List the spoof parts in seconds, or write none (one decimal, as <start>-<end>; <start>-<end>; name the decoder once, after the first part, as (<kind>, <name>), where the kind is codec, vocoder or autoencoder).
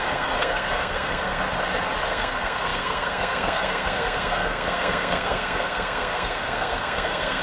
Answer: 0.0-1.4 (codec, SNAC); 2.1-7.4